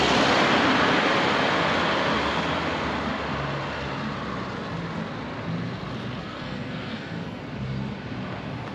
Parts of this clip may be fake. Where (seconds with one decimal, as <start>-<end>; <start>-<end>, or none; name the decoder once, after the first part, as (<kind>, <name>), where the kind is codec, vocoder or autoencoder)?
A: 6.2-7.4 (codec, SNAC)